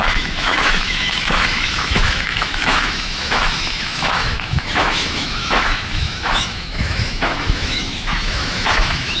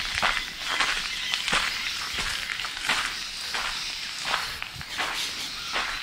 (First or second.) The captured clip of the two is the second